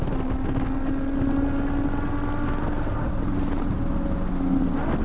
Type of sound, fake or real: real